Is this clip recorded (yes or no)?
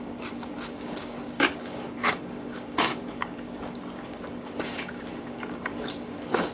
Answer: no